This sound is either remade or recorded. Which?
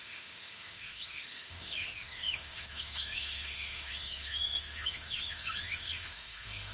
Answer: remade